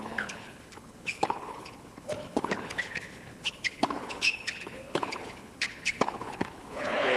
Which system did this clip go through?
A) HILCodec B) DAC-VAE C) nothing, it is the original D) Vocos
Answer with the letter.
A